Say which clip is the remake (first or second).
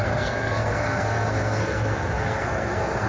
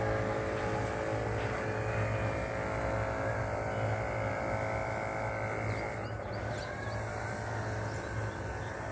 first